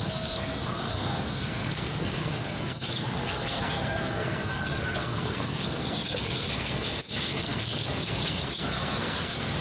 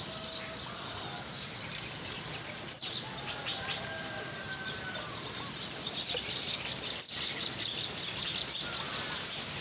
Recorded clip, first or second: second